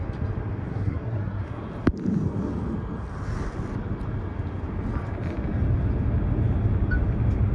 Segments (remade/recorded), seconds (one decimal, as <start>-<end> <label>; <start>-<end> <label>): 0.0-0.7 recorded; 0.7-1.4 remade; 1.4-7.5 recorded